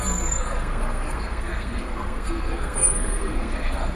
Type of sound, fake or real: fake